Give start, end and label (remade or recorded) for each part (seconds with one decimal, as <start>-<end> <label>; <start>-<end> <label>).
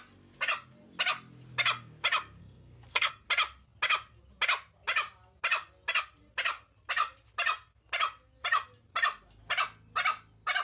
0.0-2.4 recorded; 2.4-3.1 remade; 3.1-10.6 recorded